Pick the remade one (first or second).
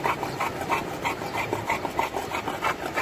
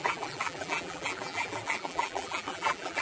second